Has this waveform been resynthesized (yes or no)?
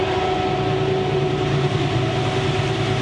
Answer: no